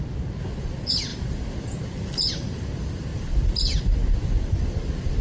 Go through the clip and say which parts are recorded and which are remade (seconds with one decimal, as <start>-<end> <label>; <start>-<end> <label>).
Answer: 0.0-5.2 recorded